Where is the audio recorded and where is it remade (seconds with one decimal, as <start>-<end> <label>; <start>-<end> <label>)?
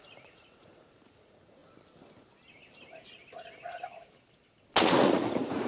0.0-1.6 remade; 1.6-4.8 recorded; 4.8-5.7 remade